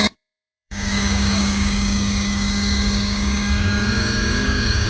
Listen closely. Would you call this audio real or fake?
fake